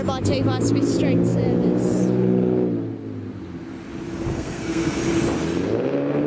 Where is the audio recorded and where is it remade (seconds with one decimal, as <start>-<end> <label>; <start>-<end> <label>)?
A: 0.0-4.3 recorded; 4.3-5.0 remade; 5.0-6.3 recorded